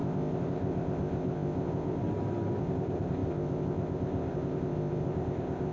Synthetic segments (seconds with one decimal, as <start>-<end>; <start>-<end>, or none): 0.0-2.0; 2.6-5.7